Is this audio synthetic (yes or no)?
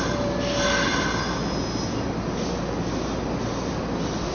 no